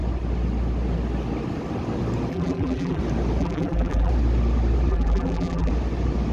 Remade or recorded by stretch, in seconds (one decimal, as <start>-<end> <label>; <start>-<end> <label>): 0.0-2.3 recorded; 2.3-3.0 remade; 3.0-3.4 recorded; 3.4-4.1 remade; 4.1-4.9 recorded; 4.9-5.7 remade; 5.7-6.3 recorded